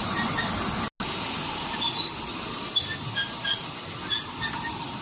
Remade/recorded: recorded